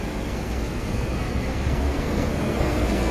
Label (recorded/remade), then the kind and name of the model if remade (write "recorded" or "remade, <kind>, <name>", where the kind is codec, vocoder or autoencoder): remade, codec, SNAC